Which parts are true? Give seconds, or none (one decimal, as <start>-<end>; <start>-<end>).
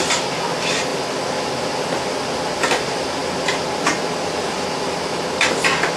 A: 0.0-6.0